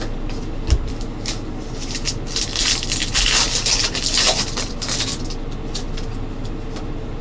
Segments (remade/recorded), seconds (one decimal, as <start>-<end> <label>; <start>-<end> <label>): 0.0-7.2 recorded